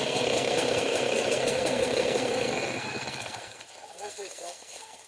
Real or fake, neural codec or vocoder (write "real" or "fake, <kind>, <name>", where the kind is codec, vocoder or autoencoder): fake, codec, SNAC